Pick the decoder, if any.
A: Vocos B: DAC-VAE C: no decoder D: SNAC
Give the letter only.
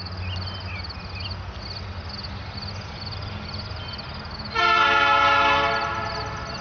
C